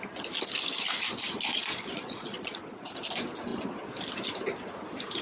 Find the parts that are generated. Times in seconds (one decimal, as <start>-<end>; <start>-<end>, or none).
1.5-2.6